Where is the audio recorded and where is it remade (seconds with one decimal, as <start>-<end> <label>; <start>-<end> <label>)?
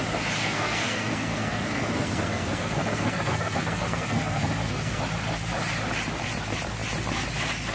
0.0-0.4 recorded; 0.4-5.0 remade; 5.0-7.7 recorded